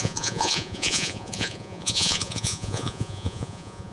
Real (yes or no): no